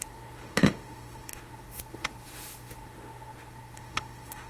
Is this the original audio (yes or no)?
no